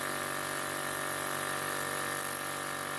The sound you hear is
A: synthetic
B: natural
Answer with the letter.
B